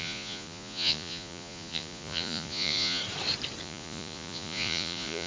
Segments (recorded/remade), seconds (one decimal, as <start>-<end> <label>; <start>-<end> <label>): 0.0-3.0 remade; 3.0-3.6 recorded; 3.6-5.3 remade